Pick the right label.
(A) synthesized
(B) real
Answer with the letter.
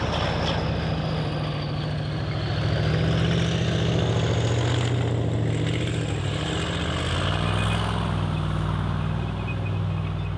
B